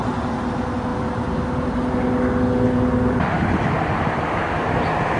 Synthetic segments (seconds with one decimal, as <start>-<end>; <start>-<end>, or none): none